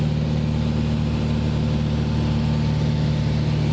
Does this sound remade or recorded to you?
recorded